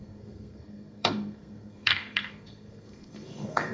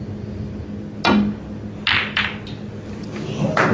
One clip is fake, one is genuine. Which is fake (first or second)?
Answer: first